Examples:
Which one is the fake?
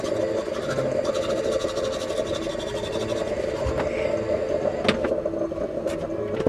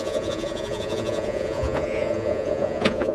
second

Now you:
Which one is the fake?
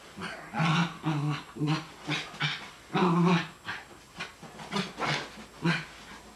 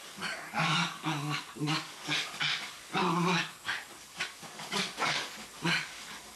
second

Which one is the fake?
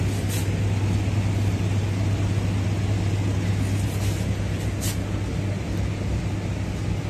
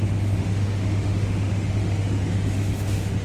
second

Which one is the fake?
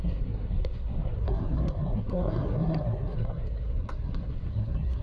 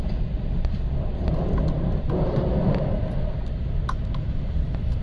first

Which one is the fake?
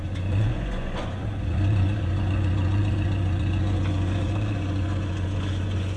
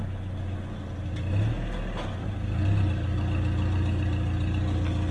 first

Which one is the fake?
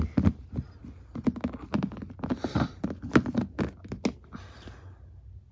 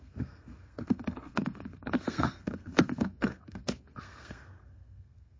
second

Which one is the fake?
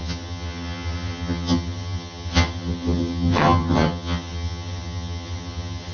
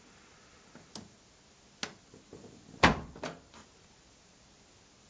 first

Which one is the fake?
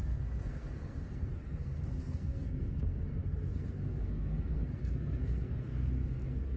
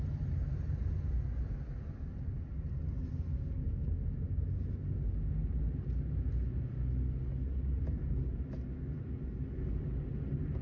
first